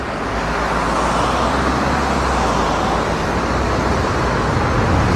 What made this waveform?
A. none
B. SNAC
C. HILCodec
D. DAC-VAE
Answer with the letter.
A